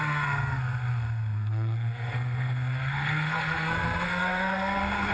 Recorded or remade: remade